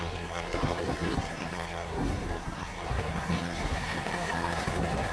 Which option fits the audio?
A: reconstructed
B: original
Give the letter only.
A